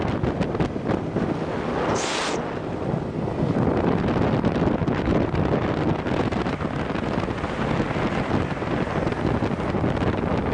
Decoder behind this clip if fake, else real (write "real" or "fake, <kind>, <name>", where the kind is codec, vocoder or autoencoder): real